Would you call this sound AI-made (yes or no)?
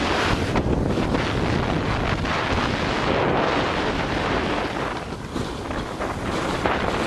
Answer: no